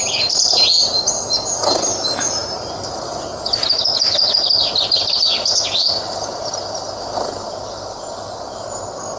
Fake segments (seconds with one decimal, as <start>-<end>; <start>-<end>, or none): none